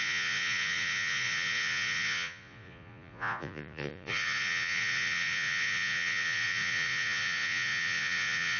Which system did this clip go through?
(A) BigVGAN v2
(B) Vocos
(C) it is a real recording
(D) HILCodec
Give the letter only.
B